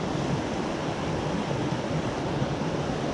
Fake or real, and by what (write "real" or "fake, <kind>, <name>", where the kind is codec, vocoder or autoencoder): real